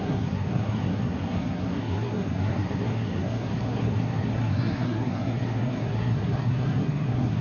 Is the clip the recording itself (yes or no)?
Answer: no